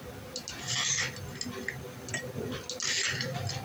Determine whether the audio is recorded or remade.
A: recorded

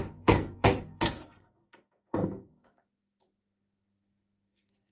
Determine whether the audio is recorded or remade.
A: remade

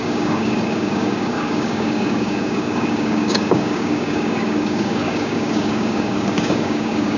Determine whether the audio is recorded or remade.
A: remade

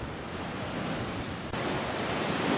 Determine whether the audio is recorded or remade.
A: recorded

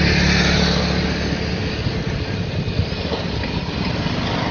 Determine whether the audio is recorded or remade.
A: recorded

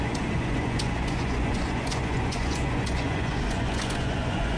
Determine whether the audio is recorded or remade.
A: remade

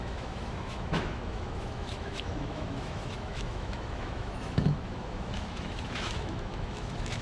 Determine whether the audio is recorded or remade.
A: remade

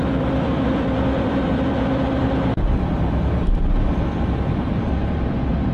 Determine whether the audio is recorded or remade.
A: remade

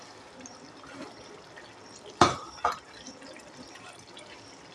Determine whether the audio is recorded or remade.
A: recorded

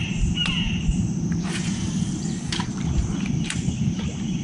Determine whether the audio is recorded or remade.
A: remade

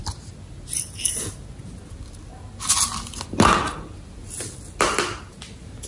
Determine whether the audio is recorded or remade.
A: recorded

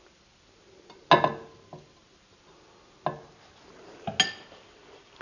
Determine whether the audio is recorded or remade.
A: recorded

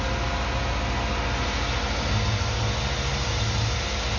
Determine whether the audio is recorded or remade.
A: recorded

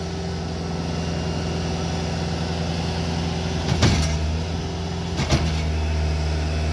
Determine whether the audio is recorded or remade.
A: recorded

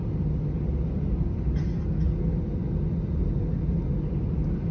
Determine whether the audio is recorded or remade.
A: recorded